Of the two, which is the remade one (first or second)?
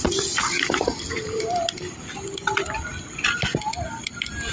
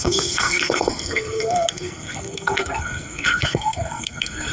second